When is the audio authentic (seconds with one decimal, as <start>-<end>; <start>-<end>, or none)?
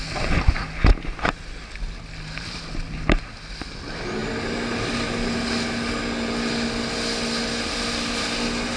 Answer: 0.0-8.8